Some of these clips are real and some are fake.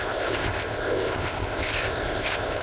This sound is fake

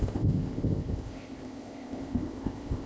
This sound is fake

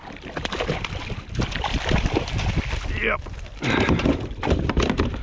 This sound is real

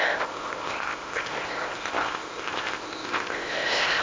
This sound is fake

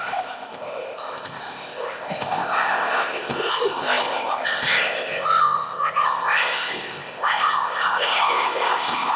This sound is fake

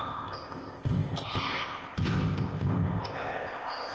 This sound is fake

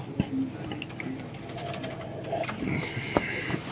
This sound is real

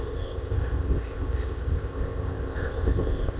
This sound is fake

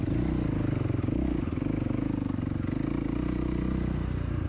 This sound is real